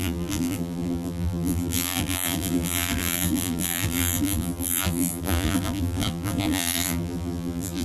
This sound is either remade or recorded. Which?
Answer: remade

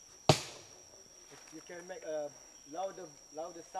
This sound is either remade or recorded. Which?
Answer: recorded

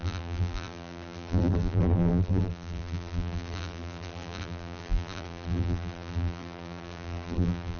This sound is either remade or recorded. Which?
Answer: remade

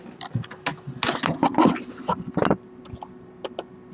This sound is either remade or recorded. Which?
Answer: recorded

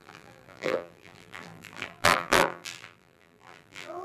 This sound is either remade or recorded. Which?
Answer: remade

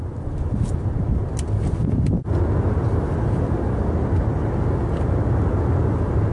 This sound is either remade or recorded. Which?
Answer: recorded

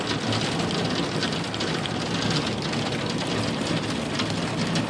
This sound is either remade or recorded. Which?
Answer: recorded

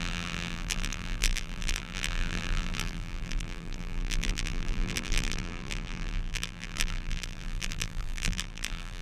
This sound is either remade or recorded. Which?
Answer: remade